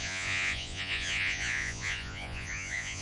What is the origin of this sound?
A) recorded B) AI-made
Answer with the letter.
B